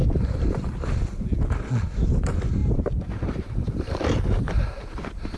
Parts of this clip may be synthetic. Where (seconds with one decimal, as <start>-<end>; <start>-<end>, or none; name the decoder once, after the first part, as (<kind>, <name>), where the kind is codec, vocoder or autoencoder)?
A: 0.0-0.8 (vocoder, BigVGAN v2); 2.6-4.8